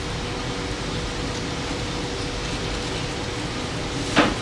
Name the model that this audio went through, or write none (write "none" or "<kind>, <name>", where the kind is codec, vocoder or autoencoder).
none